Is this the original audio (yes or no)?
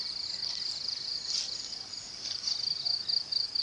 yes